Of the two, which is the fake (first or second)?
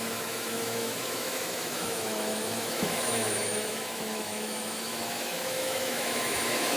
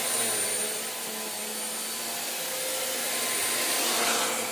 first